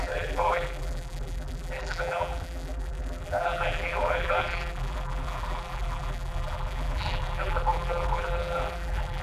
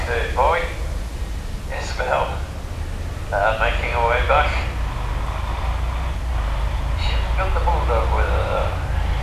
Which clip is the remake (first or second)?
first